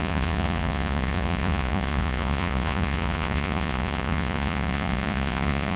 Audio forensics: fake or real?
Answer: fake